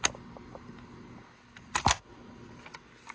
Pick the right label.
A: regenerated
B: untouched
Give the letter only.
B